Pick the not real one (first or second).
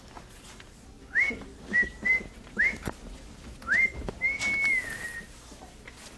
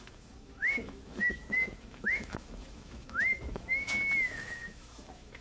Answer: second